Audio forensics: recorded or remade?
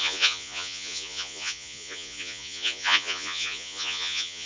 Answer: remade